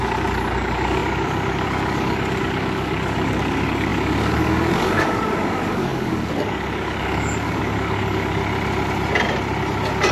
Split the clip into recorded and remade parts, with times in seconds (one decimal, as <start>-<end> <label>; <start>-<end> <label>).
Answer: 0.0-8.4 remade; 8.4-10.1 recorded